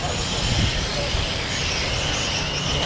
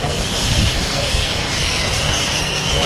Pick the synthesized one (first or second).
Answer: second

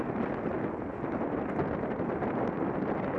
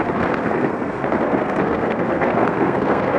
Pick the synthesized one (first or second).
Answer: second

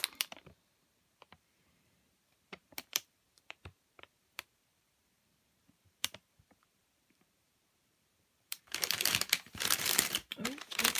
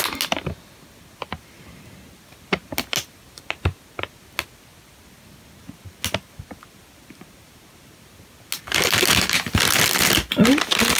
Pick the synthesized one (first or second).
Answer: first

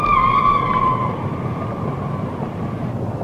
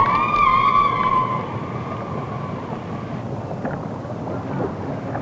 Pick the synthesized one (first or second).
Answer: first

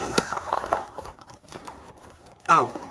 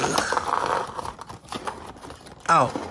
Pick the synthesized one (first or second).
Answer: first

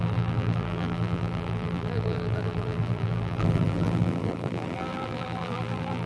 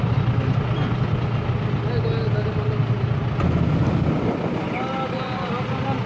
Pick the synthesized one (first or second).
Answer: first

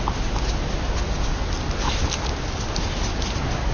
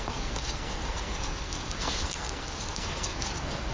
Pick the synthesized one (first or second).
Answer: second